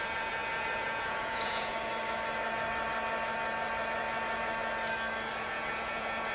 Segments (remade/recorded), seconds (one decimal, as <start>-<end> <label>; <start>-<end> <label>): 0.0-1.7 remade; 1.7-5.4 recorded; 5.4-6.3 remade